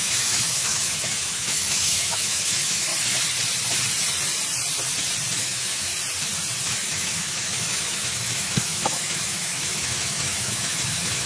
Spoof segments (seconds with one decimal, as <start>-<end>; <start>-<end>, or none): 0.0-2.9; 5.4-5.9; 6.9-11.3